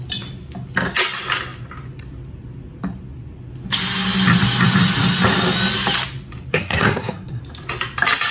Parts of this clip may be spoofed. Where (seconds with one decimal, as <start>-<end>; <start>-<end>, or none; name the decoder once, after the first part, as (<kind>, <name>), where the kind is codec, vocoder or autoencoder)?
6.5-7.4 (codec, SNAC)